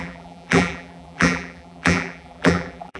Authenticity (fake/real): fake